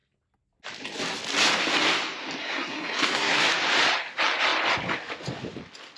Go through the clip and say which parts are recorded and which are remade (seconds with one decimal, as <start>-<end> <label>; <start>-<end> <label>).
0.0-2.4 recorded; 2.4-3.4 remade; 3.4-6.0 recorded